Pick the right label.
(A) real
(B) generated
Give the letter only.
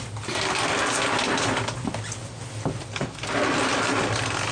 A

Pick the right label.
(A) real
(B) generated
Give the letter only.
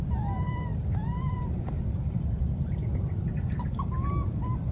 B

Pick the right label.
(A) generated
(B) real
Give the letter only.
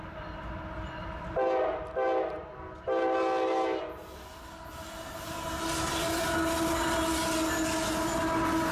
B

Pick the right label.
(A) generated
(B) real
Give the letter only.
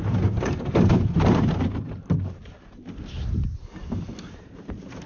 A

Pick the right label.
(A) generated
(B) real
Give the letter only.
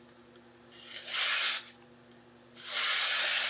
B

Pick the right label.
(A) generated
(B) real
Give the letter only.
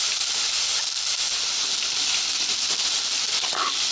B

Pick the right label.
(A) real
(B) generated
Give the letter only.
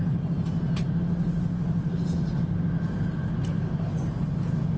A